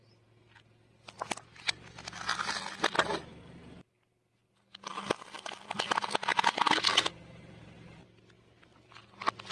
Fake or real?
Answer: real